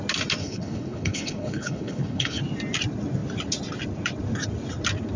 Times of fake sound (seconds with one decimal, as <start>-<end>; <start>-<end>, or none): 0.4-2.4